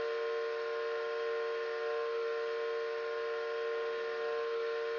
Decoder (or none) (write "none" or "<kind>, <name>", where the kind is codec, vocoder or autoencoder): none